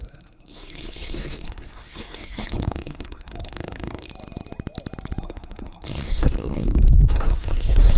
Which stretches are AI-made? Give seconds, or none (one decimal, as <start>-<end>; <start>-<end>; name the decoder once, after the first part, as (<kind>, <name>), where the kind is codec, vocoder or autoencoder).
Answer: 0.0-4.1 (codec, SNAC); 5.2-8.0